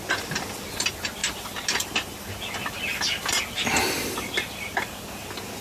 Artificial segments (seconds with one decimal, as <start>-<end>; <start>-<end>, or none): none